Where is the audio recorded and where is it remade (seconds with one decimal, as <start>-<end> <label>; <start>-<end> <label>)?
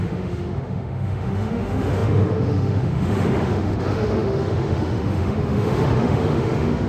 0.0-6.9 remade